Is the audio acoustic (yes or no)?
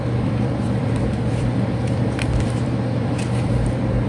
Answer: no